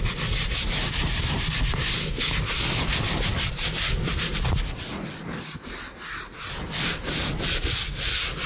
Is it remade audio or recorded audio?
recorded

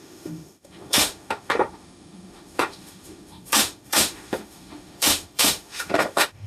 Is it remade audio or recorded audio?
remade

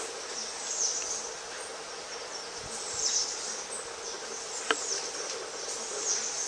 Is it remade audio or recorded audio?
recorded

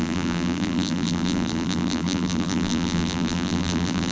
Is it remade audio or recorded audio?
remade